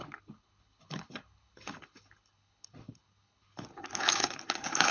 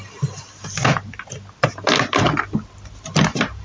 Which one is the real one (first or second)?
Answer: second